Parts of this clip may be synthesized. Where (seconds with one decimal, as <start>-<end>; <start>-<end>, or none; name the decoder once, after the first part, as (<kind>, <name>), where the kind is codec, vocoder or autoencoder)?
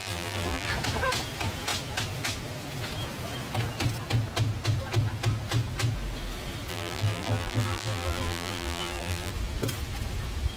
0.0-0.7 (vocoder, BigVGAN v2); 6.7-9.3